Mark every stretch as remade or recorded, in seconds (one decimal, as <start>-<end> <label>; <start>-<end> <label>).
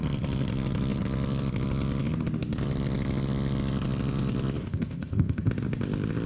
0.0-4.6 recorded; 4.6-5.5 remade; 5.5-6.3 recorded